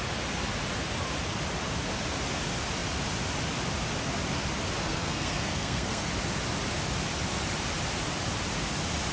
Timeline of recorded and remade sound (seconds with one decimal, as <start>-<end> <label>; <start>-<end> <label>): 0.0-4.8 recorded; 4.8-6.1 remade; 6.1-9.1 recorded

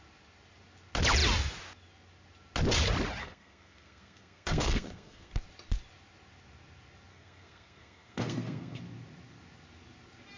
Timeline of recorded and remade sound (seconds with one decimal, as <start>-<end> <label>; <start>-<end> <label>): 0.0-3.2 recorded; 3.2-5.3 remade; 5.3-7.1 recorded; 7.1-8.8 remade; 8.8-10.4 recorded

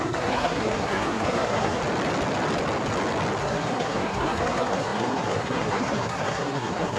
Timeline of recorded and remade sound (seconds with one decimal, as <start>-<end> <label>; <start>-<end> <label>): 0.0-1.8 remade; 1.8-3.4 recorded; 3.4-7.0 remade

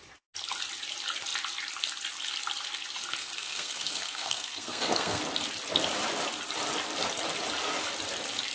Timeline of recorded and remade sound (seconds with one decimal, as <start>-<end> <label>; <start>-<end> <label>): 0.0-3.2 recorded; 3.2-5.2 remade; 5.2-8.5 recorded

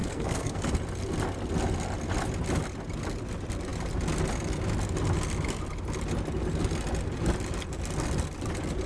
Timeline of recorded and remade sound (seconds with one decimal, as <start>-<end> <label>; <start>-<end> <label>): 0.0-0.7 remade; 0.7-8.9 recorded

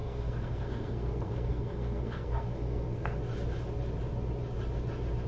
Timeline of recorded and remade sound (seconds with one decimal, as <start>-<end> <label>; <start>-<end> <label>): 0.0-3.2 remade; 3.2-5.3 recorded